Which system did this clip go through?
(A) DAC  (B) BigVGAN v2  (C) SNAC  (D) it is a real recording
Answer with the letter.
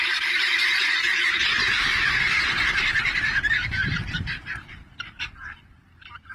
B